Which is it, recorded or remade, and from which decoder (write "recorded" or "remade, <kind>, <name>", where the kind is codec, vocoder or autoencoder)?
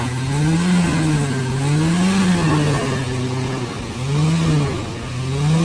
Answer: recorded